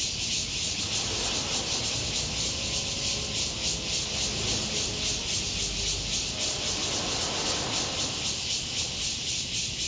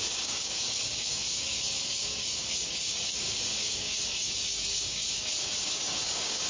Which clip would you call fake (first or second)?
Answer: second